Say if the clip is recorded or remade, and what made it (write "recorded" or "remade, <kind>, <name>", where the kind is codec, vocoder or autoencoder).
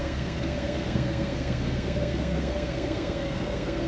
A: remade, codec, SNAC